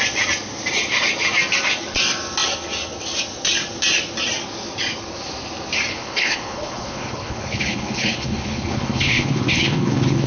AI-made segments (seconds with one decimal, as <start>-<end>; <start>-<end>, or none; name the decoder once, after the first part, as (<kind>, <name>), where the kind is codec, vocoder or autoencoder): 5.9-10.3 (codec, HILCodec)